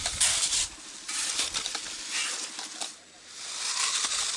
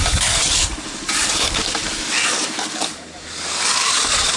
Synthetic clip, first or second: second